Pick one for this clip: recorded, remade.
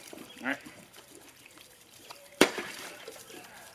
remade